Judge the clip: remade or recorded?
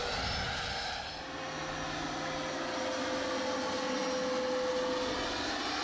recorded